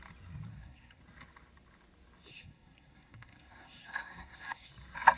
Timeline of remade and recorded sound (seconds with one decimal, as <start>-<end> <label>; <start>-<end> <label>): 0.0-0.5 recorded; 0.5-1.0 remade; 1.0-2.3 recorded; 2.3-4.7 remade; 4.7-5.2 recorded